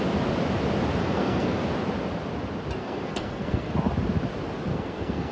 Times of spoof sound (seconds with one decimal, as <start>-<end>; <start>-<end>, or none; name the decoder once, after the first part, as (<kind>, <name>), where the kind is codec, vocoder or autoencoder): 1.0-1.6 (codec, SNAC); 2.8-3.7; 4.7-5.3